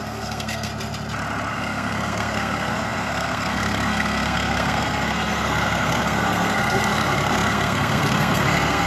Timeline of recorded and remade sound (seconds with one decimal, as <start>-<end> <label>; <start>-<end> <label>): 0.0-0.7 remade; 0.7-1.5 recorded; 1.5-8.9 remade